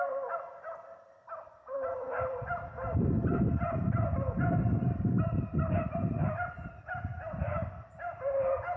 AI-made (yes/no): no